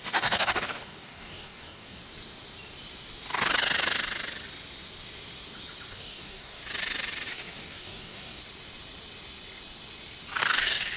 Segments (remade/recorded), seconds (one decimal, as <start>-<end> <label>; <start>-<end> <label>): 0.0-2.0 remade; 2.0-5.9 recorded; 5.9-6.6 remade; 6.6-7.3 recorded; 7.3-8.4 remade; 8.4-10.4 recorded; 10.4-11.0 remade